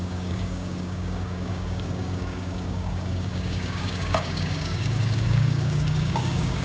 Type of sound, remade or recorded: remade